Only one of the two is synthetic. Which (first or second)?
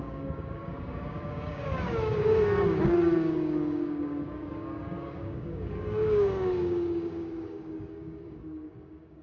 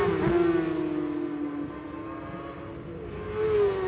first